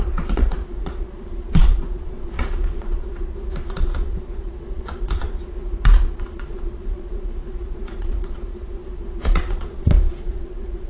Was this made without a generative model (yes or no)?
no